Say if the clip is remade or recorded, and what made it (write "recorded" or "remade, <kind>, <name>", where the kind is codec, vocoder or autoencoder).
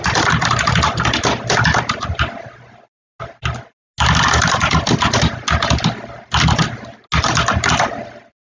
recorded